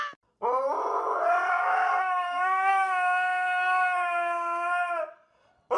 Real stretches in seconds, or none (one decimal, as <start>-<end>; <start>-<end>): 0.0-1.5; 5.0-5.8